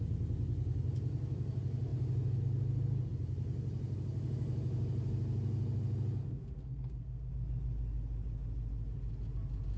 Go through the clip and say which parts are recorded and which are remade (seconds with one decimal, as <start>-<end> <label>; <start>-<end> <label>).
0.0-6.2 recorded; 6.2-7.3 remade; 7.3-9.8 recorded

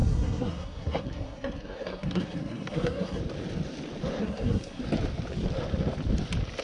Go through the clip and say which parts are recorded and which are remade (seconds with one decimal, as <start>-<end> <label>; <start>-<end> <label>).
0.0-3.2 remade; 3.2-4.2 recorded; 4.2-4.8 remade; 4.8-6.6 recorded

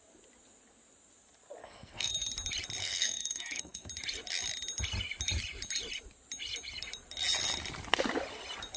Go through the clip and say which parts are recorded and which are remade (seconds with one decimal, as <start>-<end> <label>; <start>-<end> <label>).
0.0-1.6 recorded; 1.6-2.1 remade; 2.1-2.8 recorded; 2.8-3.9 remade; 3.9-8.8 recorded

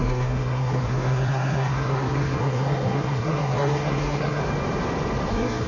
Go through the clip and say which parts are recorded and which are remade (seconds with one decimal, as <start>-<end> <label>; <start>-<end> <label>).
0.0-4.4 remade; 4.4-5.3 recorded; 5.3-5.7 remade